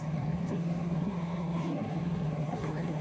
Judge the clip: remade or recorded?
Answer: remade